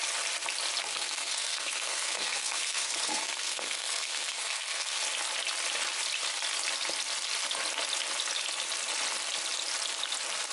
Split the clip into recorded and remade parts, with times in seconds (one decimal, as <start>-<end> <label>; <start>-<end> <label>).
0.0-0.9 recorded; 0.9-5.0 remade; 5.0-10.5 recorded